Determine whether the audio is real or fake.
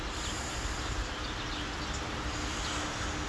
real